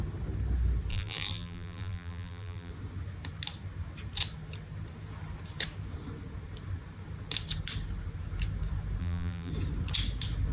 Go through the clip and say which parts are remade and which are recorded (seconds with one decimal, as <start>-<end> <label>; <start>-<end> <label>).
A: 0.0-0.9 recorded; 0.9-2.7 remade; 2.7-9.0 recorded; 9.0-9.5 remade; 9.5-10.5 recorded